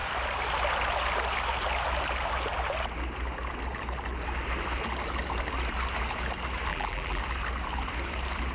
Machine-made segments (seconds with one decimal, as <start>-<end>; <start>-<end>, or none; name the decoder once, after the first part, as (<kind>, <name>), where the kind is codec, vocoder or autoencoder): 6.7-7.2 (vocoder, BigVGAN v2)